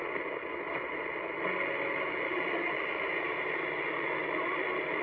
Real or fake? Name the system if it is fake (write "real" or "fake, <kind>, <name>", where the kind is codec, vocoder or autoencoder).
real